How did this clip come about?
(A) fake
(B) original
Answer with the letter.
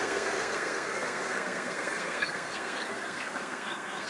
A